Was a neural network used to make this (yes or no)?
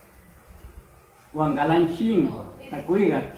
yes